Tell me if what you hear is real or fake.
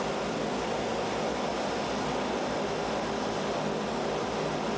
real